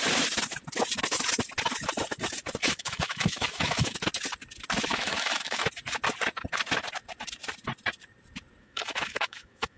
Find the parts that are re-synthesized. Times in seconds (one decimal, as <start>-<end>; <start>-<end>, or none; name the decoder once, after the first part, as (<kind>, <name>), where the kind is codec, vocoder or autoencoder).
2.6-4.0 (autoencoder, DAC-VAE); 4.9-5.7; 8.6-9.8